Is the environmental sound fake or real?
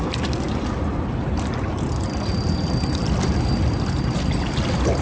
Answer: real